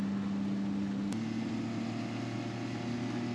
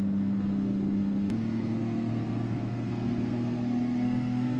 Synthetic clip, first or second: second